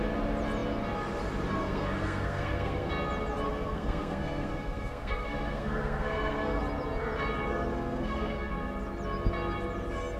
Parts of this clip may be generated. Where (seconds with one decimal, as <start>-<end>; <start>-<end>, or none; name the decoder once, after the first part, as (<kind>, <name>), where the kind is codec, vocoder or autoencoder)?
1.6-2.9 (codec, SNAC); 3.5-6.6; 7.7-8.5